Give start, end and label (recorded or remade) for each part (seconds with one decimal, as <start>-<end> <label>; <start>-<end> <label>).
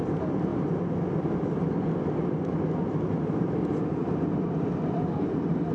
0.0-5.7 recorded